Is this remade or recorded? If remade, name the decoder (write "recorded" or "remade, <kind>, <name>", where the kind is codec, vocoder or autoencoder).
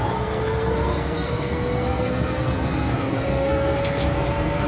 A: remade, codec, SNAC